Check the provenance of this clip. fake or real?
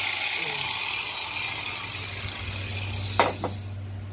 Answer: real